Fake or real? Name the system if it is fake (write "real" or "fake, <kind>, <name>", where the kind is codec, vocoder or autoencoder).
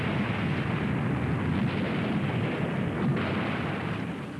real